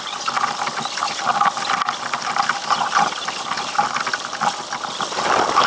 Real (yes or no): yes